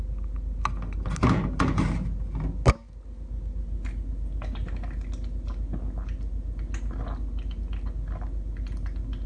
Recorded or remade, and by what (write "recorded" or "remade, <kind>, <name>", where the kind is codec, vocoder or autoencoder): recorded